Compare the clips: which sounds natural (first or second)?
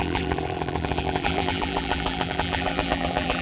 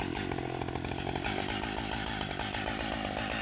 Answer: second